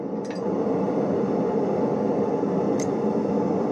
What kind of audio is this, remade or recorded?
remade